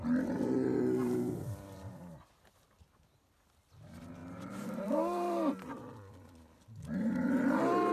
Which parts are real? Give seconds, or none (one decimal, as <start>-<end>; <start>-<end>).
0.0-4.2; 6.6-7.9